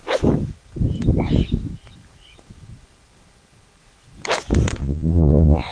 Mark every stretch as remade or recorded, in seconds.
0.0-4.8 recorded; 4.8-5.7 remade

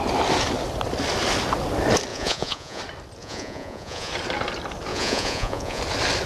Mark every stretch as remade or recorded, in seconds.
0.0-2.1 recorded; 2.1-2.8 remade; 2.8-3.2 recorded; 3.2-4.1 remade; 4.1-4.9 recorded; 4.9-5.8 remade; 5.8-6.3 recorded

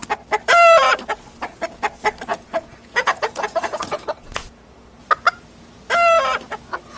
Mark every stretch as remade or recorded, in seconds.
0.0-2.3 recorded; 2.3-5.0 remade; 5.0-7.0 recorded

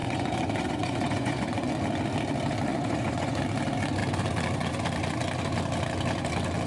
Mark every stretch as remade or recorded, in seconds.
0.0-1.7 remade; 1.7-2.7 recorded; 2.7-3.4 remade; 3.4-6.7 recorded

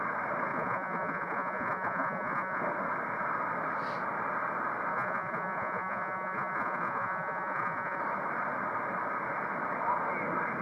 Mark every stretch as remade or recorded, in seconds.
0.0-0.5 recorded; 0.5-2.6 remade; 2.6-4.9 recorded; 4.9-8.0 remade; 8.0-10.6 recorded

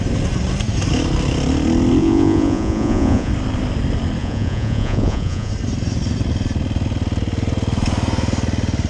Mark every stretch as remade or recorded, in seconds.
0.0-2.0 recorded; 2.0-3.3 remade; 3.3-4.2 recorded; 4.2-5.5 remade; 5.5-8.9 recorded

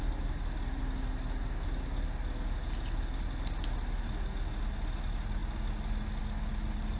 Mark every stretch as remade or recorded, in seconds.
0.0-7.0 recorded

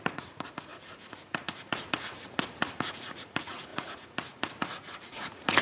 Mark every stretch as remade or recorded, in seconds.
0.0-5.6 remade